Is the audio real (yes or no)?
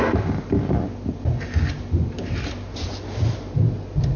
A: yes